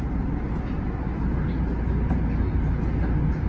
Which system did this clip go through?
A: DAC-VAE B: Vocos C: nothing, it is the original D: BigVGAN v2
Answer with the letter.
C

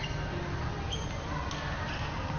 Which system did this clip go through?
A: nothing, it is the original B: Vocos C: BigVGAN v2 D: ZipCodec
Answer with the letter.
A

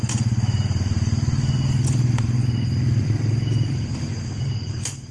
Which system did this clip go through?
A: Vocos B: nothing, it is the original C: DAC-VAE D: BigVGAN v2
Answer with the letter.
D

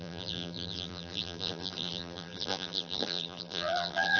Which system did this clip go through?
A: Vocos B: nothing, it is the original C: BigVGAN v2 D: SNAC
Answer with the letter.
C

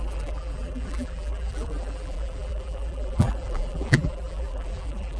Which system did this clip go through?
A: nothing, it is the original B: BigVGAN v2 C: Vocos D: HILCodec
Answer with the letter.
B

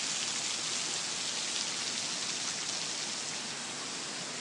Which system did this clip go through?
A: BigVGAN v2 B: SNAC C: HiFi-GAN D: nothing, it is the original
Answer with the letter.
D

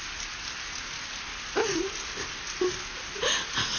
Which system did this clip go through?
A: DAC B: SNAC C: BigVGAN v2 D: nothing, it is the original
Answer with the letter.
D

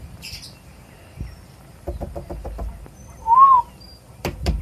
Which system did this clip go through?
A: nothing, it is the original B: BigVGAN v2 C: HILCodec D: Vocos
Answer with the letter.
B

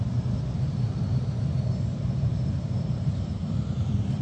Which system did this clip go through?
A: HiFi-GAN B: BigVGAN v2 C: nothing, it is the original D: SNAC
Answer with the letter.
B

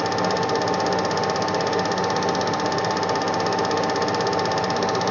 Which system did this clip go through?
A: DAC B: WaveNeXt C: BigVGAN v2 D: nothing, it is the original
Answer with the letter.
D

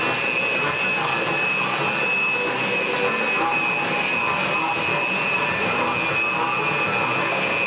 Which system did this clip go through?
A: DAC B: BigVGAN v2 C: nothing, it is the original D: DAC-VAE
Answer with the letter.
C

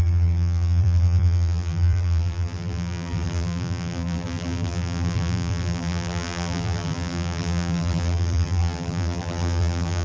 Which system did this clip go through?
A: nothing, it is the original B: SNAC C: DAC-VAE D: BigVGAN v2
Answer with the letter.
D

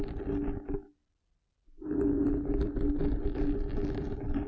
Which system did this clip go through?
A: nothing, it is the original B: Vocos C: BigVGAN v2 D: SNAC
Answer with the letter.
A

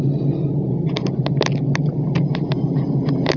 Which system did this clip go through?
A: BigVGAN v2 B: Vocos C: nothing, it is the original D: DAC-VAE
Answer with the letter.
C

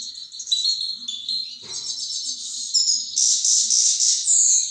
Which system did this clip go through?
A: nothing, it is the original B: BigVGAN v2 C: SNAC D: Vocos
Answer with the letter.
A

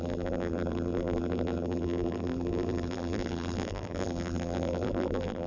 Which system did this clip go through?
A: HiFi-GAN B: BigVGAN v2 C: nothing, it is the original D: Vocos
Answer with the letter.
B